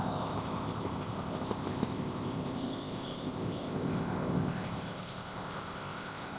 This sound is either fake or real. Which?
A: fake